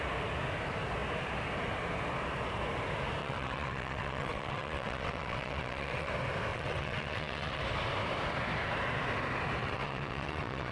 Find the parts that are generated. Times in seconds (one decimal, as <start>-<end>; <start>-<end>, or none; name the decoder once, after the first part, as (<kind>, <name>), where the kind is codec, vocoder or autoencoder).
3.2-6.1 (vocoder, WaveNeXt); 6.5-7.6; 9.6-10.7